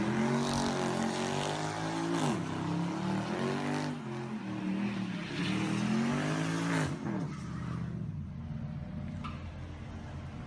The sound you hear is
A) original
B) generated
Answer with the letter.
A